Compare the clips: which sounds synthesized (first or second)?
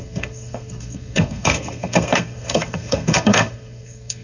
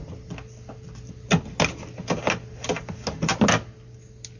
first